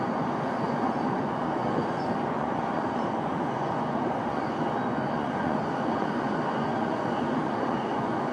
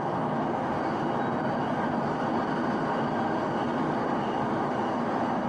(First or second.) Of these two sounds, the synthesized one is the first